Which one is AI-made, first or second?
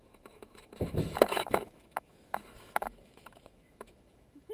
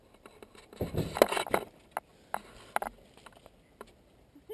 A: first